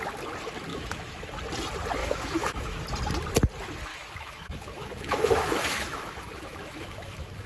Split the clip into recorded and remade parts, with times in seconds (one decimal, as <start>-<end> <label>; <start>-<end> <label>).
0.0-0.7 recorded; 0.7-1.2 remade; 1.2-2.0 recorded; 2.0-2.8 remade; 2.8-3.9 recorded; 3.9-7.5 remade